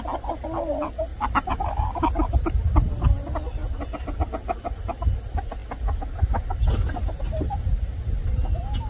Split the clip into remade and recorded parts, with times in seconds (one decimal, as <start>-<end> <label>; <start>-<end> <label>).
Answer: 0.0-1.1 recorded; 1.1-2.0 remade; 2.0-8.9 recorded

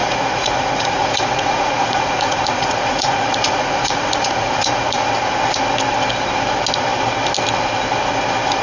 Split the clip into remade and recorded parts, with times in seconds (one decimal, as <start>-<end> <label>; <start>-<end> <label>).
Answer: 0.0-5.1 remade; 5.1-8.6 recorded

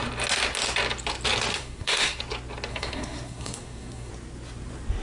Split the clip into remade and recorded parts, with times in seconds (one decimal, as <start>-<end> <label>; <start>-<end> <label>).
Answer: 0.0-1.5 recorded; 1.5-2.2 remade; 2.2-2.7 recorded; 2.7-4.1 remade; 4.1-5.0 recorded

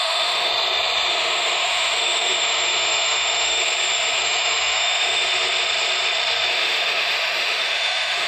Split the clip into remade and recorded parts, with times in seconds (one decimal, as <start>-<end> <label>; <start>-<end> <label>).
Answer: 0.0-0.5 remade; 0.5-1.1 recorded; 1.1-3.6 remade; 3.6-4.2 recorded; 4.2-5.2 remade; 5.2-6.5 recorded; 6.5-8.3 remade

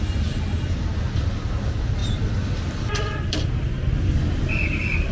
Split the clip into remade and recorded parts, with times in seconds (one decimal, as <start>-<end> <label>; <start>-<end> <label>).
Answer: 0.0-2.0 recorded; 2.0-3.5 remade; 3.5-5.1 recorded

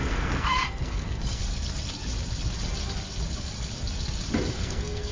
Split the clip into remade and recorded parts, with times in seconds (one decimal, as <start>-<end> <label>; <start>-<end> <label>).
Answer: 0.0-1.4 remade; 1.4-4.5 recorded; 4.5-5.1 remade

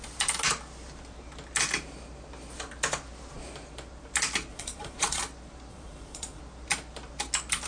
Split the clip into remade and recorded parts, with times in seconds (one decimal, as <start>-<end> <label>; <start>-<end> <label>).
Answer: 0.0-4.5 recorded; 4.5-5.2 remade; 5.2-5.7 recorded; 5.7-6.4 remade; 6.4-7.7 recorded

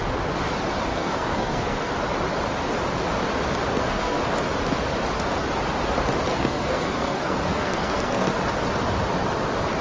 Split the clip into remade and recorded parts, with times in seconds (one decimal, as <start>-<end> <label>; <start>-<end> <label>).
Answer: 0.0-0.9 recorded; 0.9-1.9 remade; 1.9-3.7 recorded; 3.7-4.2 remade; 4.2-6.3 recorded; 6.3-8.3 remade; 8.3-9.8 recorded